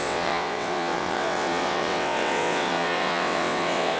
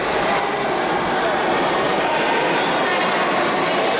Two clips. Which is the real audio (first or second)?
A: second